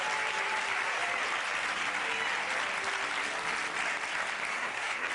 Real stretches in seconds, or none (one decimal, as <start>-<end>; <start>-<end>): 0.0-4.5